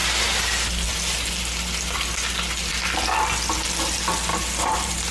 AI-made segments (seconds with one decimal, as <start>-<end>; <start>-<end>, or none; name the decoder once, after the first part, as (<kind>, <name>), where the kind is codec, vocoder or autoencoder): 4.3-5.1 (vocoder, BigVGAN v2)

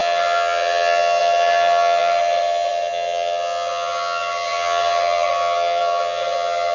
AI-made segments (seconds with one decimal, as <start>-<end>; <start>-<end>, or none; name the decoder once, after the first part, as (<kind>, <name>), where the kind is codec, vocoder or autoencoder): 0.0-6.7 (vocoder, HiFi-GAN)

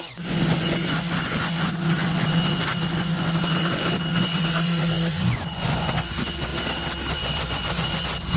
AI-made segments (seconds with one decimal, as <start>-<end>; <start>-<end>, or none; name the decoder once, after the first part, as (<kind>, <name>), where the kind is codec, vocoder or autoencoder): 0.0-6.5 (vocoder, Vocos); 7.1-8.4

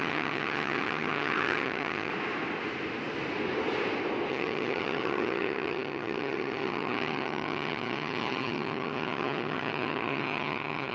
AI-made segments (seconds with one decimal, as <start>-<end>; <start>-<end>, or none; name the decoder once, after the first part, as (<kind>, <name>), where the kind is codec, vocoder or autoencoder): 0.0-2.1 (vocoder, HiFi-GAN); 4.3-10.9